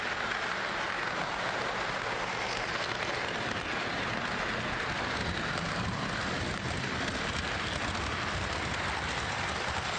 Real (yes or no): yes